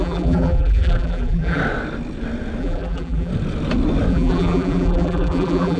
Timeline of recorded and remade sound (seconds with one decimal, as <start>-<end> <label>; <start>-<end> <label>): 0.0-1.6 remade; 1.6-2.6 recorded; 2.6-3.3 remade; 3.3-4.1 recorded; 4.1-5.8 remade